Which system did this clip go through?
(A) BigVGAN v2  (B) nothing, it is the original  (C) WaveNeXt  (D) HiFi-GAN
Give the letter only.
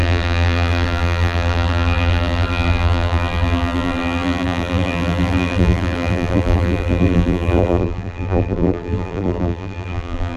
A